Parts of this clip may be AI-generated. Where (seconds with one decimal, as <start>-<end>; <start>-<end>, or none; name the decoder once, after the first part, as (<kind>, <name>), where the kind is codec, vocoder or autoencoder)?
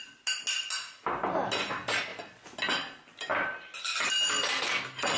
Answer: none